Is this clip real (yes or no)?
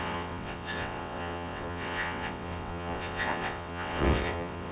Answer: no